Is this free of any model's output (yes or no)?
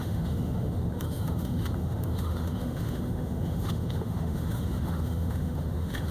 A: no